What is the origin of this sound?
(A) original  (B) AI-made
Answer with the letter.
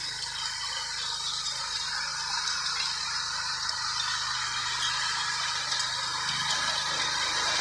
A